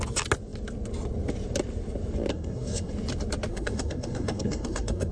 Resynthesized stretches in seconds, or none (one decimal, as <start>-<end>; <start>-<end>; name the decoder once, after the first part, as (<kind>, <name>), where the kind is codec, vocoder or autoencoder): 2.3-2.9 (codec, SNAC); 3.5-5.1